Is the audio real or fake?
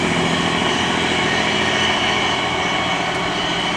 real